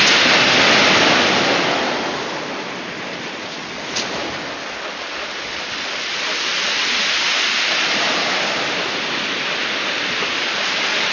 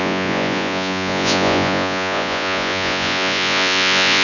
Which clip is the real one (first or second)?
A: first